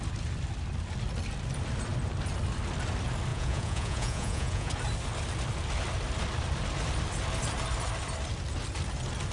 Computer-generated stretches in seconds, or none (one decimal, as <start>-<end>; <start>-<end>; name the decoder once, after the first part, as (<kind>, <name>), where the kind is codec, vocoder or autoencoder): 3.3-4.7 (vocoder, Vocos)